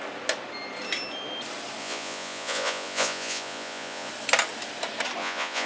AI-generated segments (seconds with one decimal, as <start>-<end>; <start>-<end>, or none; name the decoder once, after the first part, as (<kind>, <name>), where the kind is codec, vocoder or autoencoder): 1.8-4.1 (vocoder, Vocos); 5.2-5.7

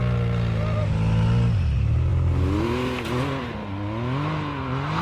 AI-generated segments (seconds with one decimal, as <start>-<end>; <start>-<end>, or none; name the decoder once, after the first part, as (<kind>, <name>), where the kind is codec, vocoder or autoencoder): none

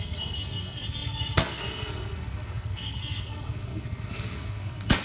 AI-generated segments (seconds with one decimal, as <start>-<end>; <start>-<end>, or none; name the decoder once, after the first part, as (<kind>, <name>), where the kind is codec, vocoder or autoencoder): 0.0-5.0 (codec, SNAC)

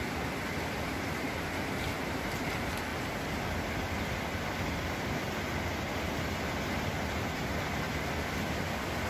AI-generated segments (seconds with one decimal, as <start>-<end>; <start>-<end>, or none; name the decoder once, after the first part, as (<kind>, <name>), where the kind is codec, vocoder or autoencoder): none

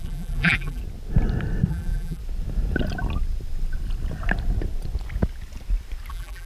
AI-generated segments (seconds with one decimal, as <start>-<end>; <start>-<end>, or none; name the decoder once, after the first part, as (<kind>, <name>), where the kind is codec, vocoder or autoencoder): 0.0-0.8 (vocoder, BigVGAN v2); 1.7-2.2; 6.1-6.5

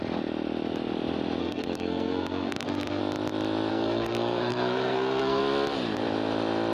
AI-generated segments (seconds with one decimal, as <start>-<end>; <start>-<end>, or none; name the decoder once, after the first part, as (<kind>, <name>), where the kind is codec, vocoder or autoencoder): 1.4-3.0 (codec, SNAC); 3.7-5.4